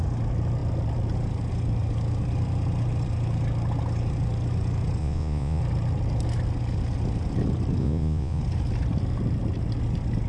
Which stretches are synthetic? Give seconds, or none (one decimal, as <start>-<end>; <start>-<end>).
5.0-5.6; 7.8-8.4